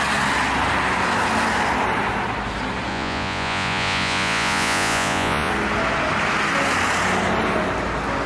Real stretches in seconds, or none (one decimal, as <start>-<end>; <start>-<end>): 0.0-2.9; 5.5-8.3